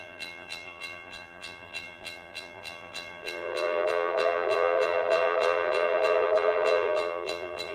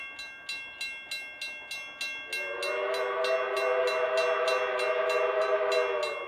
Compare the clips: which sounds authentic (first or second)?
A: second